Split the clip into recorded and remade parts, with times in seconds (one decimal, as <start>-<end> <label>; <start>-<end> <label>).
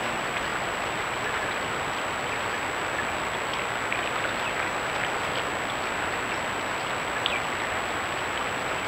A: 0.0-8.9 recorded